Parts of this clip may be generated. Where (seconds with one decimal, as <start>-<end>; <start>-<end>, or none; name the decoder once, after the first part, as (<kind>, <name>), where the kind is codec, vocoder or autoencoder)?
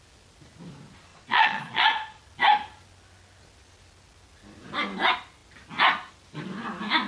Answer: 1.1-2.2 (vocoder, Vocos)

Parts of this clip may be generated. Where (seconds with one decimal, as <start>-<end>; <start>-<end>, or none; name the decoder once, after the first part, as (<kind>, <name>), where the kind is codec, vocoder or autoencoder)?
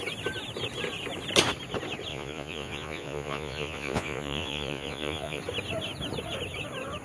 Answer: 2.1-5.4 (vocoder, Vocos)